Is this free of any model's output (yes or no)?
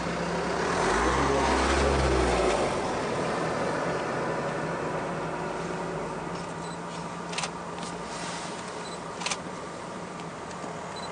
yes